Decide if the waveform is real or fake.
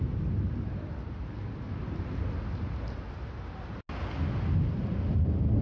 real